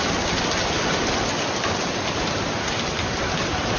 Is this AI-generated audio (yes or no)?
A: no